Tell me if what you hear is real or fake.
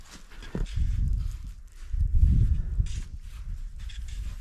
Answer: real